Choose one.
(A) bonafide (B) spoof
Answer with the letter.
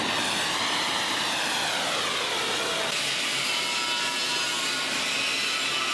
A